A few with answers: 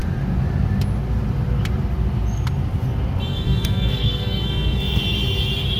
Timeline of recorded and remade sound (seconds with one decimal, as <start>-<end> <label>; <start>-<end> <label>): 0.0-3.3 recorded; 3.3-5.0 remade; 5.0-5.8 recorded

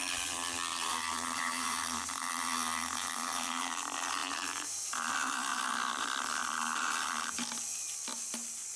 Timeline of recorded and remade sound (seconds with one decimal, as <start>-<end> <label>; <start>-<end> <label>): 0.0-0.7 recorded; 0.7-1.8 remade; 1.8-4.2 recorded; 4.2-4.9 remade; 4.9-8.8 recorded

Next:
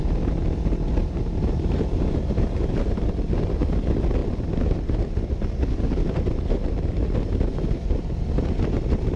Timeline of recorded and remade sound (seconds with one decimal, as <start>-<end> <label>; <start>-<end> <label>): 0.0-1.0 recorded; 1.0-3.8 remade; 3.8-9.2 recorded

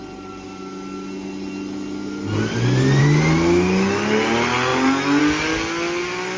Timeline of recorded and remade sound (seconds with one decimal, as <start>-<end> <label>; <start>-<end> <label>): 0.0-6.4 recorded